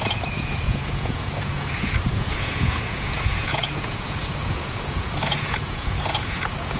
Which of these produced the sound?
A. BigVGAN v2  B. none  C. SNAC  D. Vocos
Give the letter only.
D